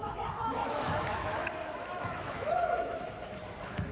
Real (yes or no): no